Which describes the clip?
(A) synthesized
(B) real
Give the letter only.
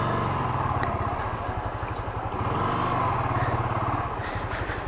B